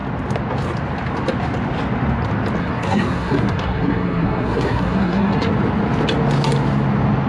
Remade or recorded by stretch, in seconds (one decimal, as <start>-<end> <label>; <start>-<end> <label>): 0.0-2.6 recorded; 2.6-5.5 remade; 5.5-7.3 recorded